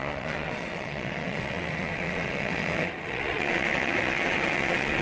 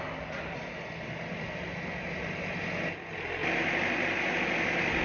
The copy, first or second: first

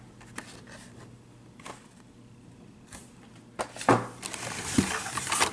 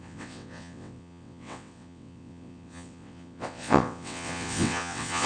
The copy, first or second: second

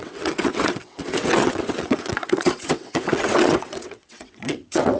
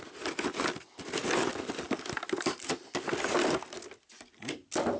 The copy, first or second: first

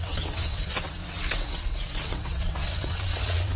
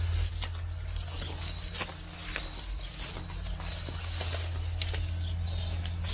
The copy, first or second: first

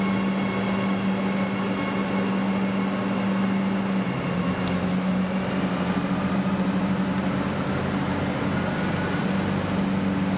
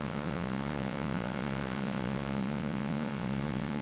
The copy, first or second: second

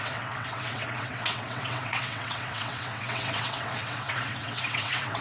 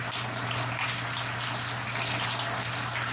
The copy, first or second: first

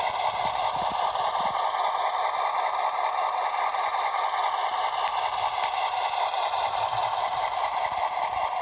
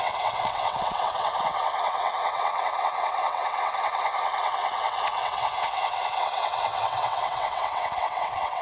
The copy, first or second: second